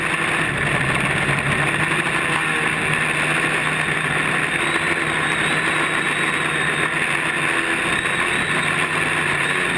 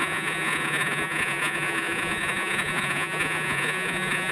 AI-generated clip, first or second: second